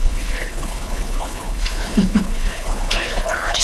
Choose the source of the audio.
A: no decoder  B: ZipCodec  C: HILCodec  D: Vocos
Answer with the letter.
C